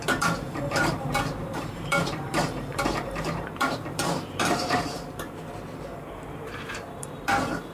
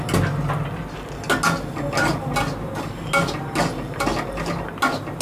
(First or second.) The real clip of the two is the second